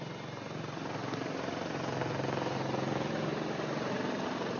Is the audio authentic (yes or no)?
yes